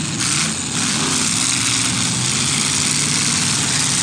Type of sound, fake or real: real